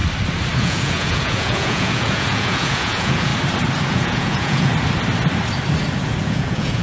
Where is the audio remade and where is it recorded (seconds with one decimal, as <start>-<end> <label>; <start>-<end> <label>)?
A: 0.0-0.6 recorded; 0.6-3.3 remade; 3.3-3.9 recorded; 3.9-4.7 remade; 4.7-6.2 recorded; 6.2-6.8 remade